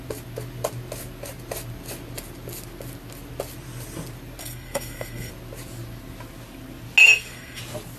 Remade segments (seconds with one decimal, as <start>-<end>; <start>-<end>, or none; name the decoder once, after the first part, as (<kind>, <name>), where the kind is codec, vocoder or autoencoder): 4.4-5.3 (codec, SNAC); 7.0-7.6